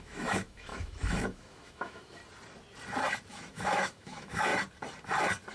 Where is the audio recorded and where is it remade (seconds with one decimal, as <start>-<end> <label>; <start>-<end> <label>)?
0.0-2.2 remade; 2.2-3.3 recorded; 3.3-4.5 remade; 4.5-5.5 recorded